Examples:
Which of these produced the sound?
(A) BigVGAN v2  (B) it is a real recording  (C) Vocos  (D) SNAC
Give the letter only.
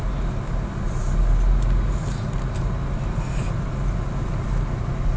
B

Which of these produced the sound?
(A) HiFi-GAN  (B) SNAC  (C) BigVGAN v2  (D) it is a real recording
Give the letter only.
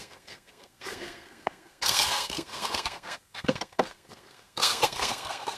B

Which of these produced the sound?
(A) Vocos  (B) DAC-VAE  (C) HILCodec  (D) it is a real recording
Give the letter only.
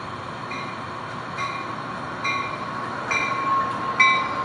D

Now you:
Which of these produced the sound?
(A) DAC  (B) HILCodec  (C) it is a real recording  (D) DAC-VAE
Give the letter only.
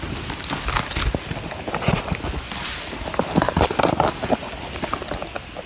C